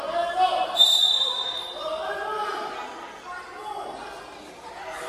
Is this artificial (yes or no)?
no